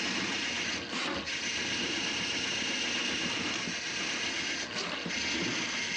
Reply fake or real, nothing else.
real